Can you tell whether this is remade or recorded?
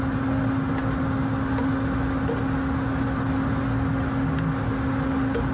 recorded